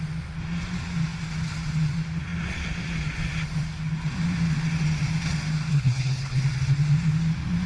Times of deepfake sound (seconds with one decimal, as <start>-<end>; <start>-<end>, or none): 5.7-6.4